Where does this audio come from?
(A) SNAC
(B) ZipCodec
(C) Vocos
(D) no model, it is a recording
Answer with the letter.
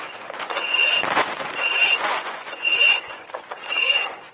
C